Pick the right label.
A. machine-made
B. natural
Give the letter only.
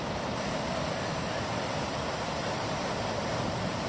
A